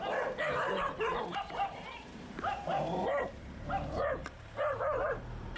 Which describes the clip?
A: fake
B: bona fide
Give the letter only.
A